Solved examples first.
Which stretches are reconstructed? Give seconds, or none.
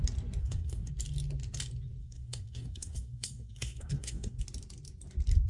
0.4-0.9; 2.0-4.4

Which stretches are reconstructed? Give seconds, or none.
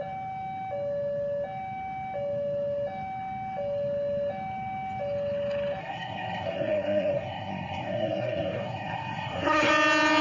5.8-9.7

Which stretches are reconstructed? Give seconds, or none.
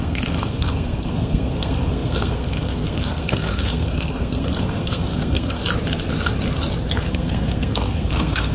0.0-5.6; 7.1-8.5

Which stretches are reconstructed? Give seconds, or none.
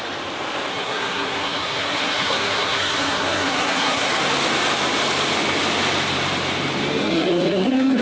0.7-4.2; 7.0-8.0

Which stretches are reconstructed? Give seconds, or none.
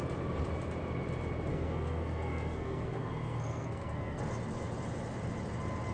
1.5-4.2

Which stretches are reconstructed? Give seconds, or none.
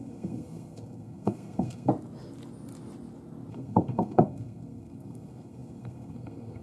0.0-1.9; 3.5-6.6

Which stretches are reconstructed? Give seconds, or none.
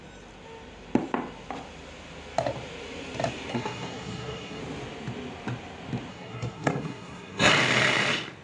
3.5-4.6; 6.1-7.5